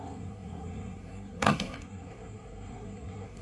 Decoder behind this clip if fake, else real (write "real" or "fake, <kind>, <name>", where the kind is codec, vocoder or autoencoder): fake, codec, SNAC